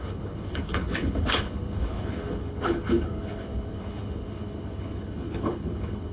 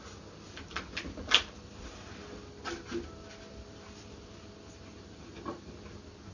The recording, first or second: second